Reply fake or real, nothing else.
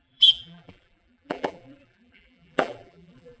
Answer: fake